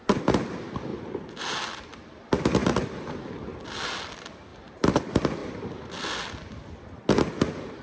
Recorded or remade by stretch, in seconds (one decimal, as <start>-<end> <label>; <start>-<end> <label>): 0.0-0.9 recorded; 0.9-1.4 remade; 1.4-2.6 recorded; 2.6-3.4 remade; 3.4-4.5 recorded; 4.5-5.0 remade; 5.0-5.4 recorded; 5.4-5.9 remade; 5.9-7.8 recorded